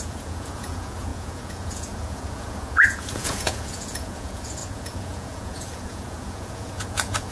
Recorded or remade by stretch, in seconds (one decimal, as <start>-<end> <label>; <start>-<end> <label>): 0.0-7.3 remade